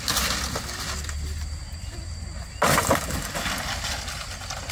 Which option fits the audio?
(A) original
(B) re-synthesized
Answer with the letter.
A